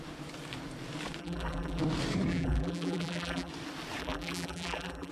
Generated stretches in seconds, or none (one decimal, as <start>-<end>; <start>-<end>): 1.2-1.8; 2.3-3.5; 4.0-5.1